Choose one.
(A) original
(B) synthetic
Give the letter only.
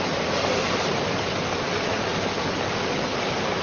A